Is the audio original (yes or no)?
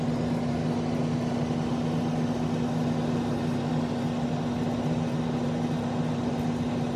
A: yes